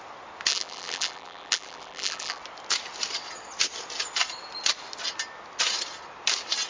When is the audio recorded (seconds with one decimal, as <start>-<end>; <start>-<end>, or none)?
0.0-0.5; 2.4-6.7